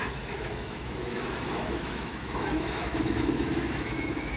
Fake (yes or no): yes